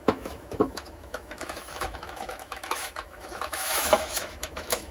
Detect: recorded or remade remade